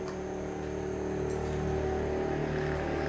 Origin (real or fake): real